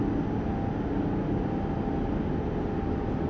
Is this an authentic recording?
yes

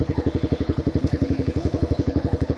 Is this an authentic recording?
no